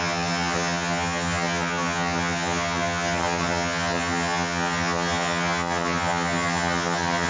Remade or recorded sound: remade